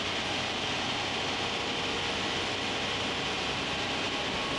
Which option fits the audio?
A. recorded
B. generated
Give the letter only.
A